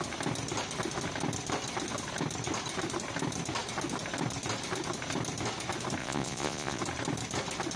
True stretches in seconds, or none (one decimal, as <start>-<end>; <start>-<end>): 0.0-6.0; 6.8-7.8